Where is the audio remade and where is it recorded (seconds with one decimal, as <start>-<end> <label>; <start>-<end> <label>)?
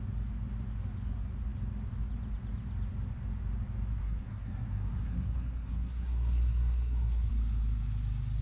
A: 0.0-4.0 recorded; 4.0-7.3 remade; 7.3-8.4 recorded